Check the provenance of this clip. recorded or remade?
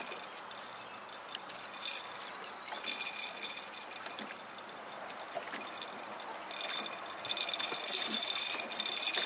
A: recorded